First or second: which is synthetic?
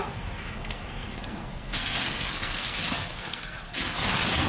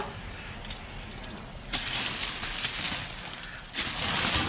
first